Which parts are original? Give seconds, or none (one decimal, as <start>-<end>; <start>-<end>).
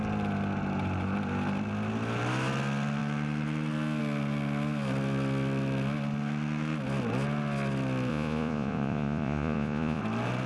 0.0-8.1; 10.0-10.5